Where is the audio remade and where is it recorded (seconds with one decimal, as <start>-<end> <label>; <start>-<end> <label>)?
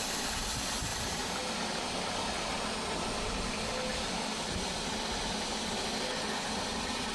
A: 0.0-0.9 recorded; 0.9-1.9 remade; 1.9-7.1 recorded